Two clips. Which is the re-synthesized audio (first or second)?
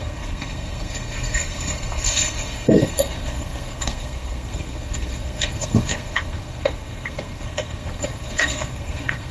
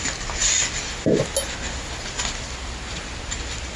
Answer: first